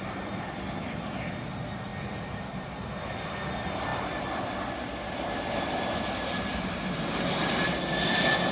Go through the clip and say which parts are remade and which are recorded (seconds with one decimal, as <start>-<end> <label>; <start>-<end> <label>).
0.0-8.5 recorded